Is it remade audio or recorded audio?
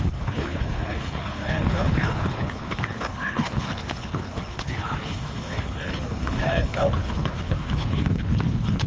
remade